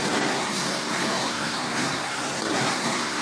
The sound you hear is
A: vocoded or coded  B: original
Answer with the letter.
A